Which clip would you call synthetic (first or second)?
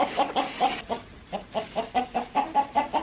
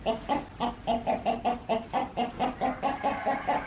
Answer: first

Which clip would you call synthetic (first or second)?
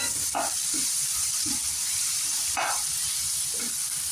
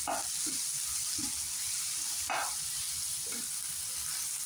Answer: first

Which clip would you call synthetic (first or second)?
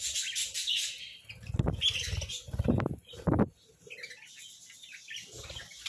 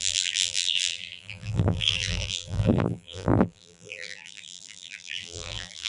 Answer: second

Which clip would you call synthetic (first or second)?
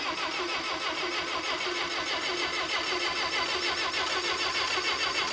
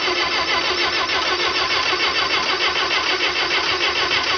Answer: second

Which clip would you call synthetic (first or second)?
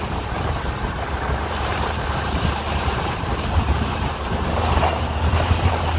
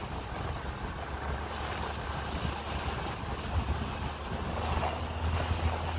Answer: first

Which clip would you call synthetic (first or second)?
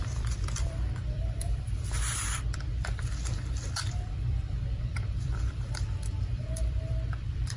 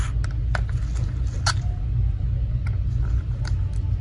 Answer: first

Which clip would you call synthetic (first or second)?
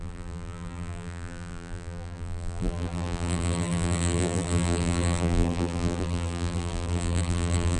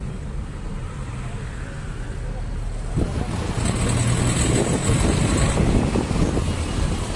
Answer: first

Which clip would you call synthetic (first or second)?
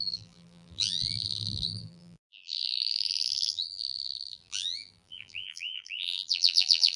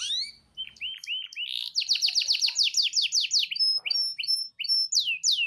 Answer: first